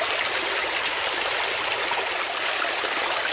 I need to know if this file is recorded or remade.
recorded